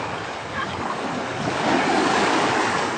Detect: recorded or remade remade